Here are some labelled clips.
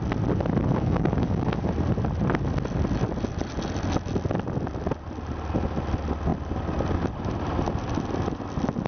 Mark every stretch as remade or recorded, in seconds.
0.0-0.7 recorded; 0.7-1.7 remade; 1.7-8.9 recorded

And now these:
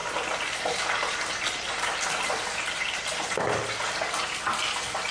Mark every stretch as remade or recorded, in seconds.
0.0-5.1 recorded